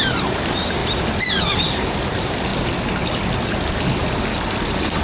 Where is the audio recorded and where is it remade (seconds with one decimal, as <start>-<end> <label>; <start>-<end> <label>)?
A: 0.0-0.8 remade; 0.8-1.4 recorded; 1.4-2.5 remade; 2.5-5.0 recorded